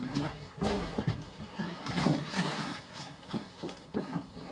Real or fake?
fake